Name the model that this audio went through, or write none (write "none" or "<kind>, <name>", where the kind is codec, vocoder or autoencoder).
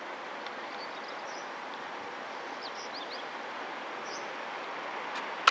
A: none